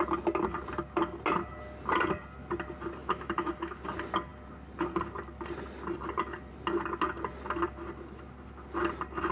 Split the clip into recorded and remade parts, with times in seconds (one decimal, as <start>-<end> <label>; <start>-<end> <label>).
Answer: 0.0-3.0 recorded; 3.0-3.8 remade; 3.8-9.3 recorded